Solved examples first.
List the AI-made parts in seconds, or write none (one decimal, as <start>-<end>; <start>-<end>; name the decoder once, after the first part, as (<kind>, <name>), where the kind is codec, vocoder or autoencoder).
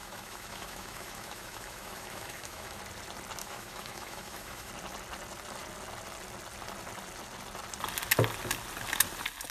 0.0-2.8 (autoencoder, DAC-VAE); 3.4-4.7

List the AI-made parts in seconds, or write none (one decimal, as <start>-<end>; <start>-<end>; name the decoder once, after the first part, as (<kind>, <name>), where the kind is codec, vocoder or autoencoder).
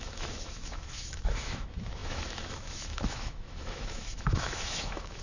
0.0-5.2 (autoencoder, DAC-VAE)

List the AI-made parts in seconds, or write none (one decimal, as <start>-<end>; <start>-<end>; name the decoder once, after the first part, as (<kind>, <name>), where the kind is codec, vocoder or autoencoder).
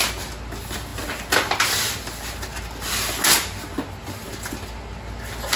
none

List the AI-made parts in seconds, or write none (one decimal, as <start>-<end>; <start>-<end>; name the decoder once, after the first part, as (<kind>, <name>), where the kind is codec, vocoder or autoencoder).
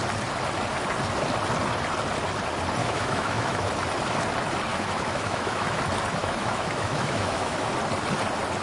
2.8-3.7 (autoencoder, DAC-VAE); 4.7-5.8; 6.2-7.7